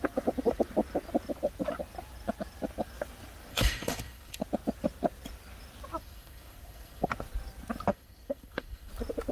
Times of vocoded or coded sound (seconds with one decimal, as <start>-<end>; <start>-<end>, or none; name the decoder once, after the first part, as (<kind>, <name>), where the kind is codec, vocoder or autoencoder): 3.5-4.4 (codec, SNAC); 6.0-7.1; 7.9-8.9